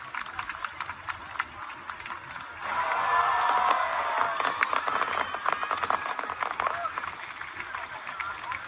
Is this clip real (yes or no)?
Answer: yes